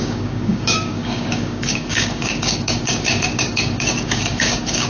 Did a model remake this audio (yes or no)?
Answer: yes